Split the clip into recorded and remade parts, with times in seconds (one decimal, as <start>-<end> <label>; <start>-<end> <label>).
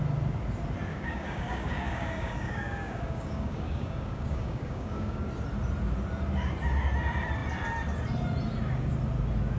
0.0-0.9 recorded; 0.9-5.3 remade; 5.3-9.6 recorded